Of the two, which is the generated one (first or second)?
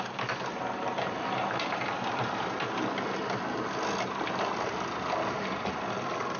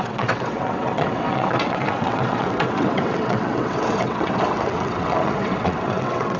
second